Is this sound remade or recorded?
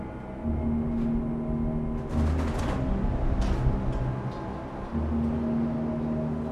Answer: recorded